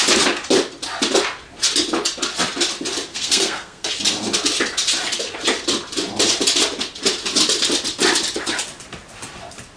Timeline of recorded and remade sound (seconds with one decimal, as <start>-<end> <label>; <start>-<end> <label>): 0.0-3.1 recorded; 3.1-3.9 remade; 3.9-9.8 recorded